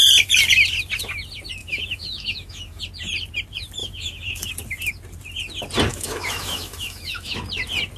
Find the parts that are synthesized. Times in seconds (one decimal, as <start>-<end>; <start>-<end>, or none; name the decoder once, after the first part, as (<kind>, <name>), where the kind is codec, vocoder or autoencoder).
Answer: 1.6-2.8 (autoencoder, DAC-VAE); 3.8-4.5; 5.9-7.4